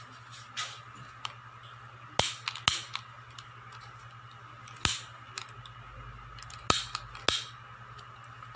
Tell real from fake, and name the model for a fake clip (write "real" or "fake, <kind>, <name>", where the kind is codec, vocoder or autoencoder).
real